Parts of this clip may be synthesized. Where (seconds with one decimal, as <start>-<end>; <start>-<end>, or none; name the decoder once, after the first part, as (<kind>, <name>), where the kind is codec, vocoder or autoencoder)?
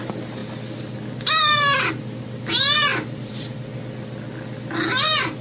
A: none